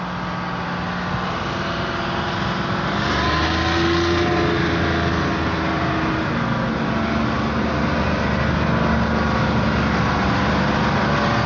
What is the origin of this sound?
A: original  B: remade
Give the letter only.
A